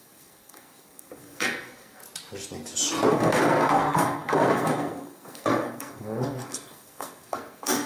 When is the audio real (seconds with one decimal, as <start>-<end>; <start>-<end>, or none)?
2.0-3.1